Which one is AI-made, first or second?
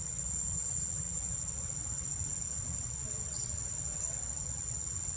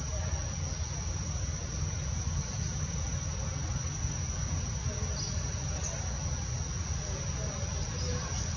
first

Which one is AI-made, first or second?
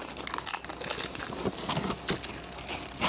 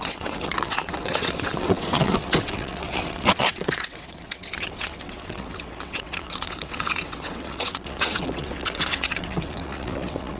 second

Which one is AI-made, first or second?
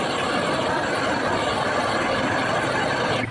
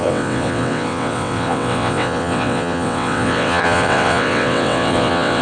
second